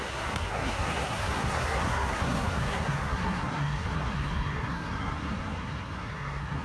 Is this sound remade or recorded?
remade